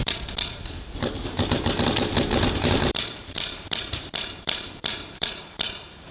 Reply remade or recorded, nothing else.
remade